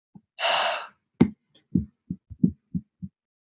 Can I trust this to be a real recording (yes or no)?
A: yes